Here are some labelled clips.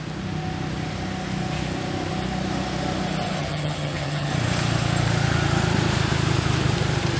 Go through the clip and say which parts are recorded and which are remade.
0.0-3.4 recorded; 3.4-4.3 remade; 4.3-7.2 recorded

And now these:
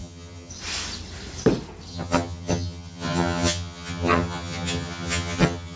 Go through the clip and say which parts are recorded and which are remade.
0.0-0.5 remade; 0.5-1.9 recorded; 1.9-5.8 remade

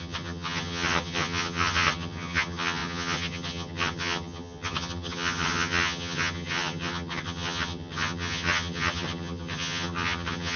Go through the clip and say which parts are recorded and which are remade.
0.0-10.6 remade

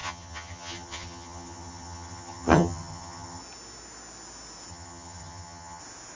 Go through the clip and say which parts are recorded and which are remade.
0.0-3.4 remade; 3.4-4.7 recorded; 4.7-5.8 remade; 5.8-6.2 recorded

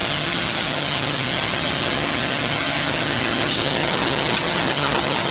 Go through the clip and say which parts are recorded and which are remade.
0.0-5.3 remade